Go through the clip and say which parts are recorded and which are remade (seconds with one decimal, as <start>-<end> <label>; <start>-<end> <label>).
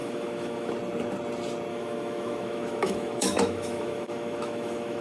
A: 0.0-0.7 remade; 0.7-1.7 recorded; 1.7-5.0 remade